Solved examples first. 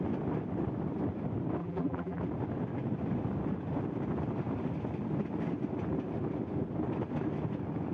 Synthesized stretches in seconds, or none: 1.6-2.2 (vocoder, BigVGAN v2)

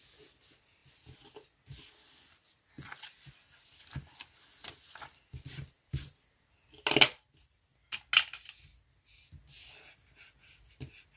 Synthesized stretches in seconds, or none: none

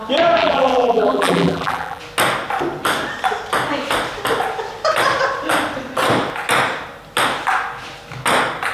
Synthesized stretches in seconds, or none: 0.4-2.0 (vocoder, BigVGAN v2)

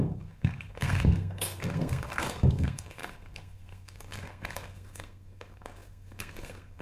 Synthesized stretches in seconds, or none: 0.0-6.8 (codec, SNAC)

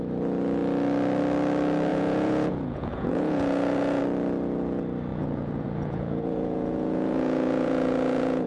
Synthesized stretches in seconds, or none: 1.9-4.0 (vocoder, Vocos); 5.1-8.5

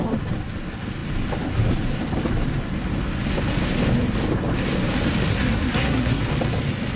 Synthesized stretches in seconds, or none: 5.3-6.2 (codec, SNAC)

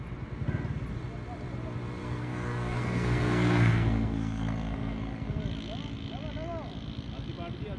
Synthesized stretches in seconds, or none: 2.0-5.4 (codec, SNAC)